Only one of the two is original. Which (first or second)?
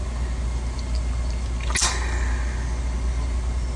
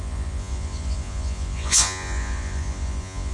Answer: first